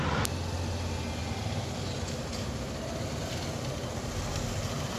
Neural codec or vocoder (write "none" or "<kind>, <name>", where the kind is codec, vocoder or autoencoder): none